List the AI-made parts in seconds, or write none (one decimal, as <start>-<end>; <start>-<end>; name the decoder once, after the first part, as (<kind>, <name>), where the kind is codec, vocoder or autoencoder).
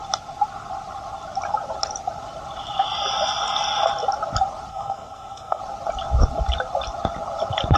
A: 4.7-5.6 (codec, SNAC)